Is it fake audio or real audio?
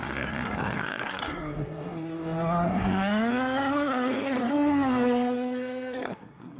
fake